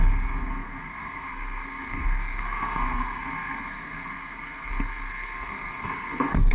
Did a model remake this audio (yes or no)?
yes